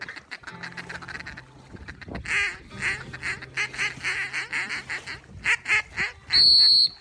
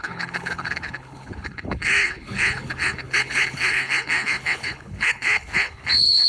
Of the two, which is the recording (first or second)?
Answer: first